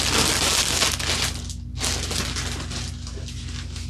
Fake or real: real